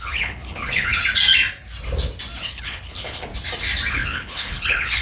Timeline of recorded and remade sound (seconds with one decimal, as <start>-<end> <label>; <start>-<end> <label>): 0.0-0.9 remade; 0.9-2.4 recorded; 2.4-3.3 remade; 3.3-3.9 recorded; 3.9-5.0 remade